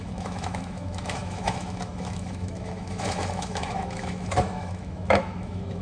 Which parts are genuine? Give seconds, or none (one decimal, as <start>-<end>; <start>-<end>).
none